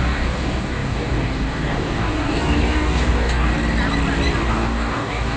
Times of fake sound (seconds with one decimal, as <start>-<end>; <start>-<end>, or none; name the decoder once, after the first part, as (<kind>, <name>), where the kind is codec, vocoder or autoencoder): 0.0-3.5 (codec, DAC); 4.5-5.4